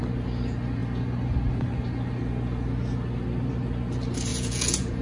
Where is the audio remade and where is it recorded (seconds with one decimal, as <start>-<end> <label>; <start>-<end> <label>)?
0.0-4.3 recorded; 4.3-5.0 remade